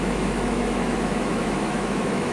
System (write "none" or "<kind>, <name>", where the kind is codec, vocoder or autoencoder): autoencoder, DAC-VAE